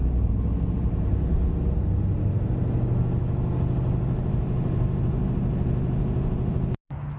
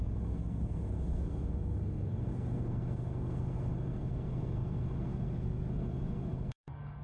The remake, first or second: second